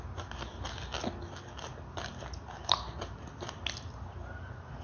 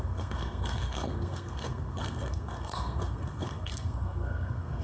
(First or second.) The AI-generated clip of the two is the second